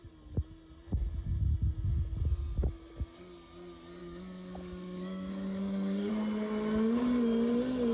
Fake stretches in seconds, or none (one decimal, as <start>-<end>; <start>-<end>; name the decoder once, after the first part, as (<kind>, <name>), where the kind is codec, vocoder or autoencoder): 4.0-6.1 (codec, DAC)